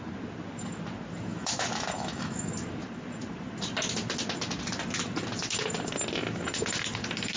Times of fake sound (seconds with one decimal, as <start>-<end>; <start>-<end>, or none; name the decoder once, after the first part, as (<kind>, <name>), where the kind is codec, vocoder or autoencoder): 1.3-2.5 (autoencoder, DAC-VAE)